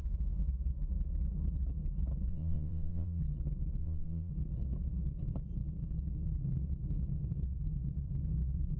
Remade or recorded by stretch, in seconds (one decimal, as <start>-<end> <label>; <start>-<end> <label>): 0.0-2.3 recorded; 2.3-3.2 remade; 3.2-3.8 recorded; 3.8-4.3 remade; 4.3-8.8 recorded